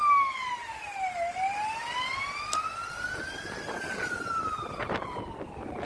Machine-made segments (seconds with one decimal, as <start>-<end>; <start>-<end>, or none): none